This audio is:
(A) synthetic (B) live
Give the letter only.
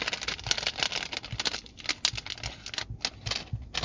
B